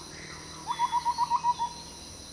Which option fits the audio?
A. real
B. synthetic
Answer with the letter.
A